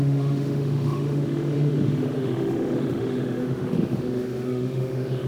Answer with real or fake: fake